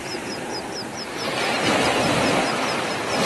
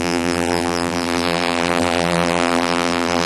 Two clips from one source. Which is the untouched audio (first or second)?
first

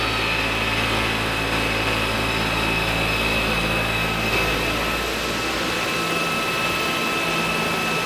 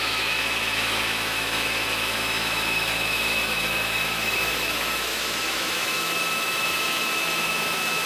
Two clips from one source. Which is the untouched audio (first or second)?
first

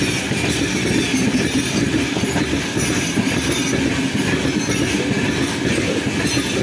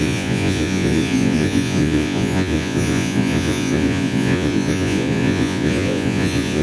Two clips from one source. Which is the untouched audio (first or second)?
first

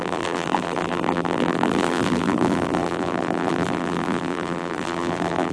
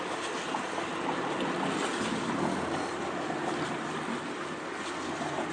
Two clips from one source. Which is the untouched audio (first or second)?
second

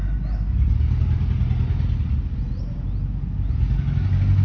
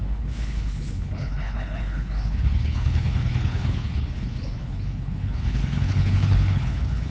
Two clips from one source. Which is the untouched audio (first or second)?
first